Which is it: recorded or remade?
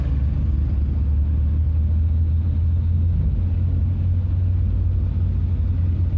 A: recorded